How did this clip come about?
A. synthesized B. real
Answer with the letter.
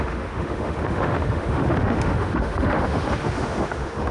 A